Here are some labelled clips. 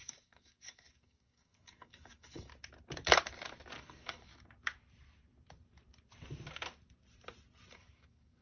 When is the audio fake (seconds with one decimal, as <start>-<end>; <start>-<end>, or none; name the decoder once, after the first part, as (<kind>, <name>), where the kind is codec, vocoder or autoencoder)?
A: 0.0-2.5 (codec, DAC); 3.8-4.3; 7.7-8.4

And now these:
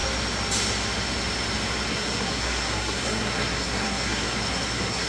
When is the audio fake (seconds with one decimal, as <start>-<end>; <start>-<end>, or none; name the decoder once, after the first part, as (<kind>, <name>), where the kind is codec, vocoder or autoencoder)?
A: 1.9-5.1 (codec, SNAC)

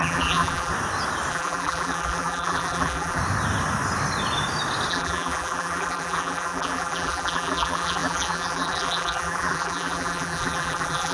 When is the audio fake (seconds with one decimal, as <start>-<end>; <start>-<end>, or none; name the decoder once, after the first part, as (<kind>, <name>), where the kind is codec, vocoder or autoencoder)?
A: 0.0-0.7 (vocoder, BigVGAN v2); 1.3-3.2; 4.9-11.1

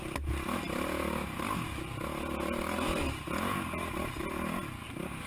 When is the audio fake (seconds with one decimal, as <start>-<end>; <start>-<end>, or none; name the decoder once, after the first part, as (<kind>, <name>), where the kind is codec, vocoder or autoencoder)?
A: none